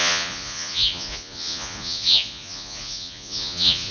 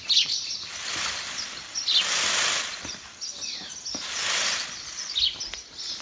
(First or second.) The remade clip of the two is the first